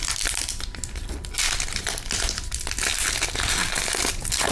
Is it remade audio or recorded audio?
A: recorded